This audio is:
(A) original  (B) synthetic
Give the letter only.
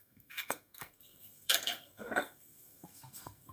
B